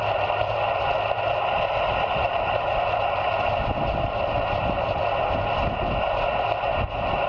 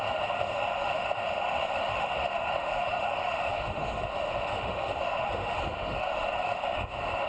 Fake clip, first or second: second